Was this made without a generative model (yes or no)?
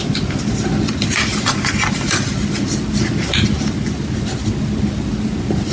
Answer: yes